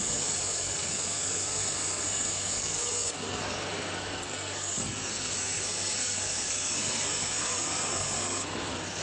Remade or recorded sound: remade